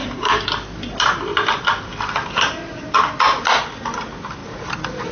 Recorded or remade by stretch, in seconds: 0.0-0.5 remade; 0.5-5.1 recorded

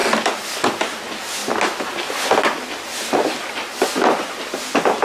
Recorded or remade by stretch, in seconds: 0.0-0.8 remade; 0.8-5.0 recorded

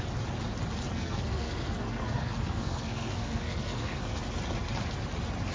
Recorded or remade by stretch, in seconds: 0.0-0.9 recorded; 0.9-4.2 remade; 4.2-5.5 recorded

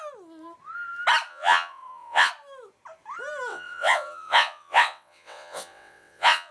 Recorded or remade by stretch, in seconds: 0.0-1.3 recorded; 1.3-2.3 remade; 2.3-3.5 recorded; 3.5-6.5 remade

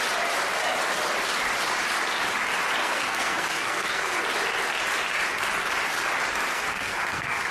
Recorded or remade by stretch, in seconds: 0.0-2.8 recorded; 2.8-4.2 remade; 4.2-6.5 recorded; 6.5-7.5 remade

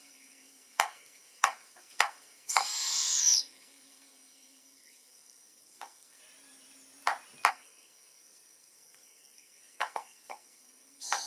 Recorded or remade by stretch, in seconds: 0.0-6.2 remade; 6.2-7.5 recorded; 7.5-11.3 remade